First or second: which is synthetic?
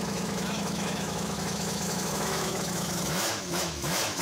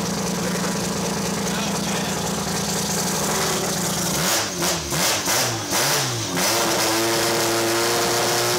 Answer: first